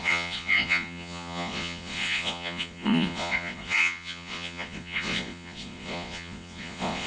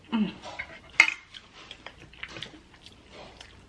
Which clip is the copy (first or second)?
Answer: first